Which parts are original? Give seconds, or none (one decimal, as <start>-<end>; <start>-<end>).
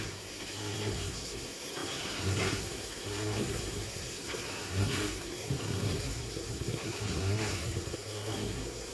none